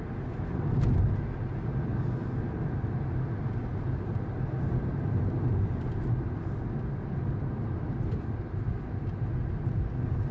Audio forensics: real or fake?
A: real